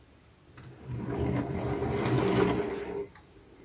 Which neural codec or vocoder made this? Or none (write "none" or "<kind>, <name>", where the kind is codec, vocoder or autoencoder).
none